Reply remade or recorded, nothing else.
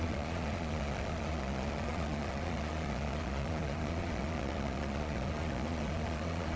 remade